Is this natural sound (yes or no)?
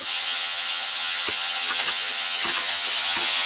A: no